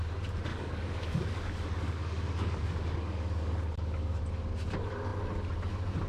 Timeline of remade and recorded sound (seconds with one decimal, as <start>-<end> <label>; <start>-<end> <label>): 0.0-0.5 recorded; 0.5-4.2 remade; 4.2-6.1 recorded